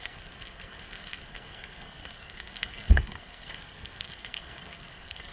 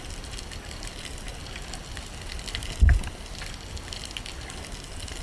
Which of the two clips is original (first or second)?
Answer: second